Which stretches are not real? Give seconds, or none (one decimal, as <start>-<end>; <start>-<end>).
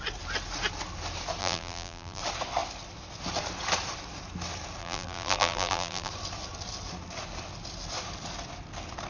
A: 1.4-2.2; 4.8-6.1